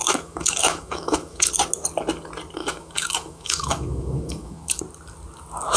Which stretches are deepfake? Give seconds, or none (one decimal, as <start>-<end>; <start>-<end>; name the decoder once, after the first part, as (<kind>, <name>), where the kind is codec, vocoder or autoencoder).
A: 0.0-1.5 (autoencoder, DAC-VAE); 2.6-4.8